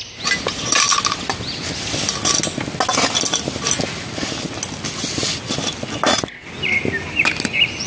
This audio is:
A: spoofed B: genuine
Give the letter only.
B